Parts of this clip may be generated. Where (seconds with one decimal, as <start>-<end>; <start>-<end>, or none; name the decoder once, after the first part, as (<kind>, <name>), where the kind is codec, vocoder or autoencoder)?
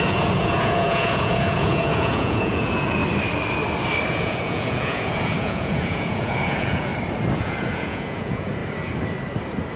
0.0-3.0 (vocoder, Vocos); 4.1-6.9; 7.4-8.6